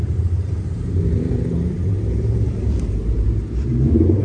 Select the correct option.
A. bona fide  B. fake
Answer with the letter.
B